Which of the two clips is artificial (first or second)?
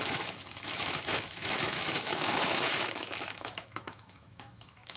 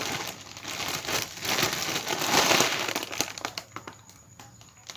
first